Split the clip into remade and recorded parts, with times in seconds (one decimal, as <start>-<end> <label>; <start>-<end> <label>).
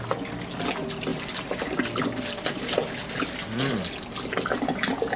0.0-5.2 recorded